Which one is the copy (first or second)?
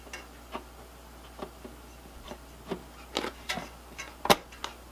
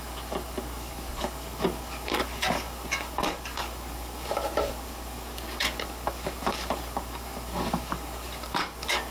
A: second